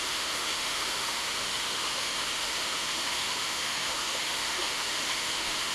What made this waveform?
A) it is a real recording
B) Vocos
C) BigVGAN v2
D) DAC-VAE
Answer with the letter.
D